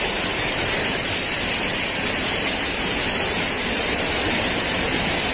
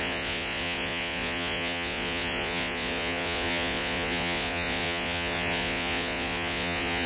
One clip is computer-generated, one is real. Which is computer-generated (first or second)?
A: second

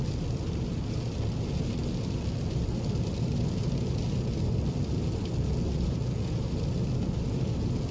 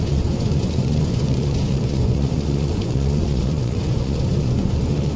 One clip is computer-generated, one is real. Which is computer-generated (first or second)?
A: second